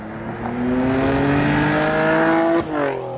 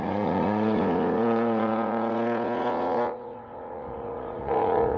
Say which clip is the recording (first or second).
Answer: first